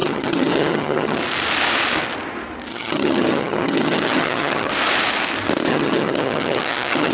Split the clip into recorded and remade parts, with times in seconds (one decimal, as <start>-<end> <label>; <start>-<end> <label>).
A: 0.0-1.2 remade; 1.2-2.7 recorded; 2.7-4.7 remade; 4.7-5.7 recorded; 5.7-7.1 remade